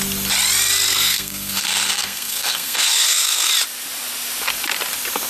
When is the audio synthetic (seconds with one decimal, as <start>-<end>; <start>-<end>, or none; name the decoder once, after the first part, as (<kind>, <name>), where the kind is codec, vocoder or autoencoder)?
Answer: 0.9-3.5 (codec, SNAC)